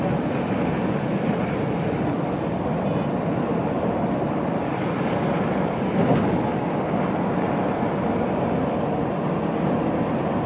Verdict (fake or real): real